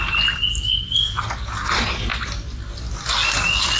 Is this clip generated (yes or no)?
no